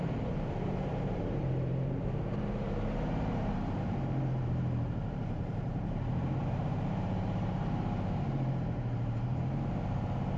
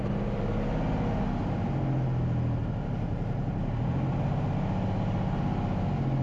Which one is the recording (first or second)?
second